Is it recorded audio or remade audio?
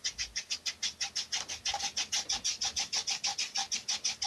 recorded